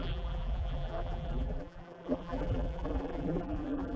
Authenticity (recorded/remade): remade